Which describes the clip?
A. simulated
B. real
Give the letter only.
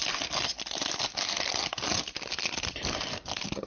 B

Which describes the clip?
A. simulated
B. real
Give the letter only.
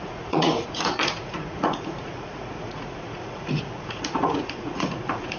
A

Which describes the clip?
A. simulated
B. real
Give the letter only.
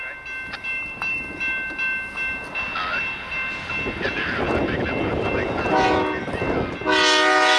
B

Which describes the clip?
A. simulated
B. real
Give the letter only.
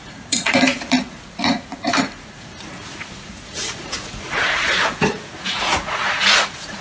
A